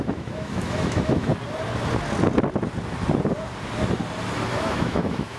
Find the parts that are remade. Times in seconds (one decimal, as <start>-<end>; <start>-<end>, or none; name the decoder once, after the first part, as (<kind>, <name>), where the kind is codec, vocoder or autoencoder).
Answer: 0.0-1.3 (autoencoder, DAC-VAE); 4.5-5.4